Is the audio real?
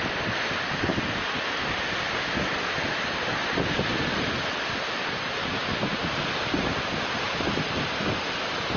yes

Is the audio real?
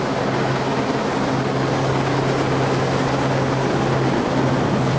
yes